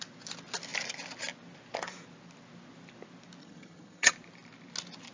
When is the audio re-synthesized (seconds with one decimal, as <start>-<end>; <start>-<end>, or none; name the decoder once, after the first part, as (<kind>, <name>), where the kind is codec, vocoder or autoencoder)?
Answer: 3.4-4.1 (vocoder, HiFi-GAN)